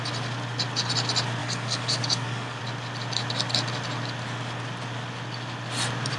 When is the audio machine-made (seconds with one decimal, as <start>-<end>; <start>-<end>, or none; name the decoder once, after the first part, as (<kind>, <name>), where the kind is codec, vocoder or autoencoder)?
1.4-2.6 (codec, DAC)